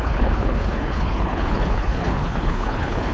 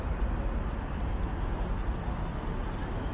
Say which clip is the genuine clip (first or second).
second